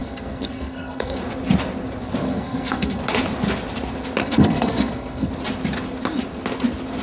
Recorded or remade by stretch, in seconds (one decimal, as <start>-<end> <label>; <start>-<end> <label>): 0.0-1.2 remade; 1.2-2.2 recorded; 2.2-3.0 remade; 3.0-4.2 recorded; 4.2-5.3 remade; 5.3-7.0 recorded

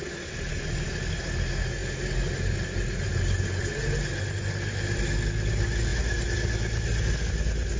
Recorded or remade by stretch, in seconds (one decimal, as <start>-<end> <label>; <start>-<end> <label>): 0.0-7.8 recorded